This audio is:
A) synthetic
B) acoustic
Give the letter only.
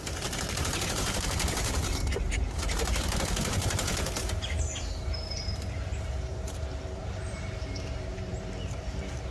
A